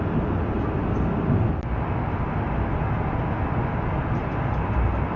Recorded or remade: recorded